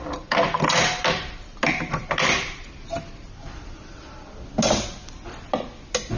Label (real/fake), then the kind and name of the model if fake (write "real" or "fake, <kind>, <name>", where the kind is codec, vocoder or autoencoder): real